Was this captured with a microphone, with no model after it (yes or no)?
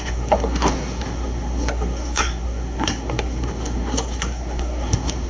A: no